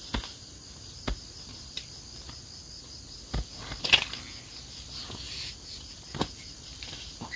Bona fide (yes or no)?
yes